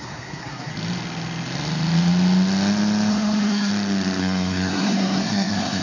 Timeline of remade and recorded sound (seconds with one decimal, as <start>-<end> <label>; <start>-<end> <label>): 0.0-0.7 remade; 0.7-3.1 recorded; 3.1-3.7 remade; 3.7-4.2 recorded; 4.2-5.8 remade